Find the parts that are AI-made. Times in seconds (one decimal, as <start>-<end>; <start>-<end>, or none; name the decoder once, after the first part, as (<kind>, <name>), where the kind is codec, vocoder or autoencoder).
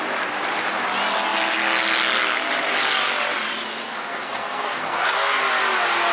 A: 3.8-5.4 (codec, SNAC)